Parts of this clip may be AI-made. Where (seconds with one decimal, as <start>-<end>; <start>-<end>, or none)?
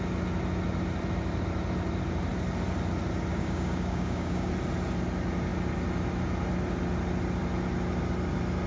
3.3-4.5